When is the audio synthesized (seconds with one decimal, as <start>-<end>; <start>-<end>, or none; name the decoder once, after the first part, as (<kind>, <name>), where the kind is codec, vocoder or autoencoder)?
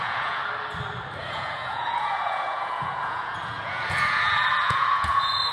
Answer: 0.0-0.4 (vocoder, Vocos); 1.2-5.5